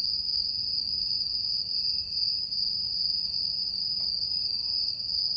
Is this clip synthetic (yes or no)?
no